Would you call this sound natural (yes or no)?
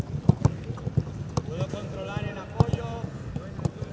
yes